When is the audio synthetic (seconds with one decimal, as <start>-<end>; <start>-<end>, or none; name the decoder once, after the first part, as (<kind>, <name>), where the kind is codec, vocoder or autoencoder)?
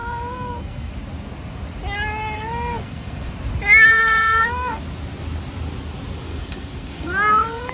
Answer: 0.0-0.9 (codec, SNAC); 2.2-3.3; 3.9-4.8; 6.3-7.7